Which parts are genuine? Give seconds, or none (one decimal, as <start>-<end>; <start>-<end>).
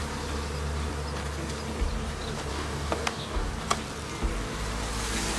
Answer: 0.0-2.5; 3.5-5.4